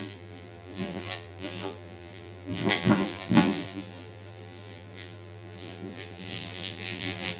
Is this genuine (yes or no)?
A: no